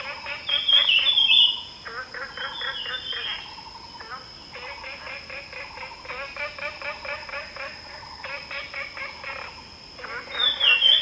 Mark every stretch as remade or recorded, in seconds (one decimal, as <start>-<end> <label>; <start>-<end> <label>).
0.0-11.0 recorded